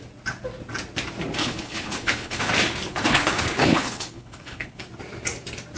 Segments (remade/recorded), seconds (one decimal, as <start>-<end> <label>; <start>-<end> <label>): 0.0-1.4 recorded; 1.4-2.5 remade; 2.5-2.9 recorded; 2.9-4.8 remade; 4.8-5.8 recorded